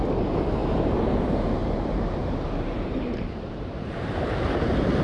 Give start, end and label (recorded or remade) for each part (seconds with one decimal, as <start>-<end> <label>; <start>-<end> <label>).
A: 0.0-1.6 recorded; 1.6-4.6 remade; 4.6-5.0 recorded